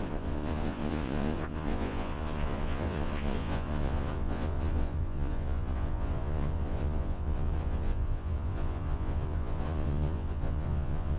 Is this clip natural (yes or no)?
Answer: no